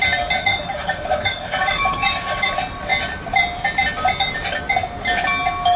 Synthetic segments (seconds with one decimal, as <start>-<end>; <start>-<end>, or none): 0.4-2.5